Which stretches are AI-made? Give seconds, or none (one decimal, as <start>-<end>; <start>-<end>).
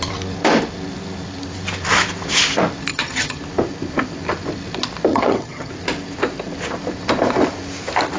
2.9-3.4; 5.1-5.7